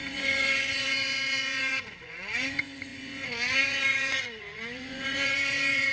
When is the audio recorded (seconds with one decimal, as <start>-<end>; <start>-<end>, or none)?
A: none